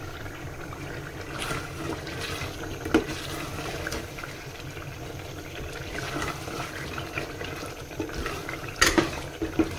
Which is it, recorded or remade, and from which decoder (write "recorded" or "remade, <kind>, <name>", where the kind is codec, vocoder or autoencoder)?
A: recorded